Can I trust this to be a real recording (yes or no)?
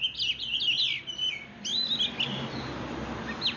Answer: yes